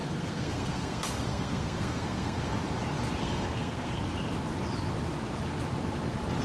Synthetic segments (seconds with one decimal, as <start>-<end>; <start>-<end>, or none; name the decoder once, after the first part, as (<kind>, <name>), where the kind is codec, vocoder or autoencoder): 0.0-2.6 (codec, SNAC); 3.2-4.0